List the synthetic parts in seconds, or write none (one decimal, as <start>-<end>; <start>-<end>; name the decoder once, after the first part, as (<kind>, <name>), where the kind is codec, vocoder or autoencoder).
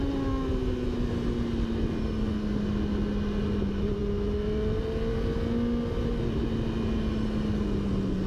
none